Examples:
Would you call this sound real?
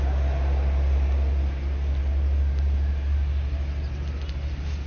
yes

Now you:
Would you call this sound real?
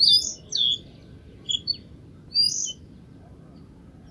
yes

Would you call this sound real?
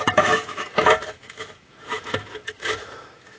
no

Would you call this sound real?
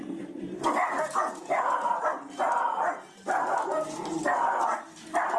yes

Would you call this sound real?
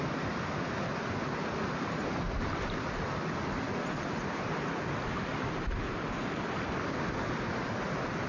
yes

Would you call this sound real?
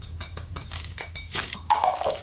no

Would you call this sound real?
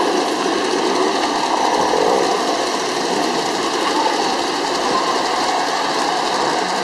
yes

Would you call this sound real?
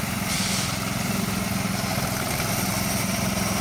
yes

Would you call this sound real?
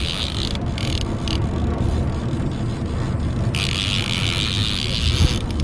yes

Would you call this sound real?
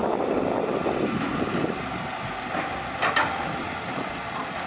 yes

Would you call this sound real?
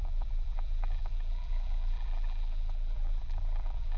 no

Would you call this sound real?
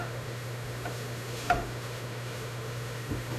no